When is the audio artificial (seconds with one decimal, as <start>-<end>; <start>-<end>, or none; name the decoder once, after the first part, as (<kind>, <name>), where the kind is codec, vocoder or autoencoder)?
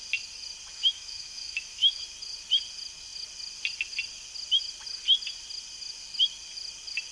0.7-2.0 (autoencoder, DAC-VAE)